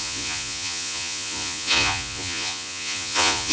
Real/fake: fake